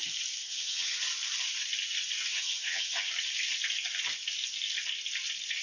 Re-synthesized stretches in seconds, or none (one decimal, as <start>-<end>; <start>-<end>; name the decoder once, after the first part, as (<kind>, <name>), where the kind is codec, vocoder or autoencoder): 0.4-1.0 (vocoder, HiFi-GAN); 2.3-3.1